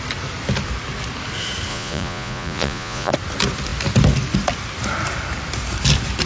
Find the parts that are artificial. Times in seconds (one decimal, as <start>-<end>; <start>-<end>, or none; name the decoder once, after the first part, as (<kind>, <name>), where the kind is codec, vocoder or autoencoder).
1.7-3.1 (vocoder, Vocos)